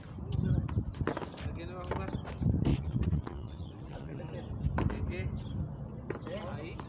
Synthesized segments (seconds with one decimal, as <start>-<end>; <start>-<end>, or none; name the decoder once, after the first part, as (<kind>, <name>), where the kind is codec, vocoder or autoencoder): 2.7-4.2 (vocoder, WaveNeXt)